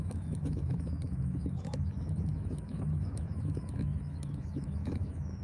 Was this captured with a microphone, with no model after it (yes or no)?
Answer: no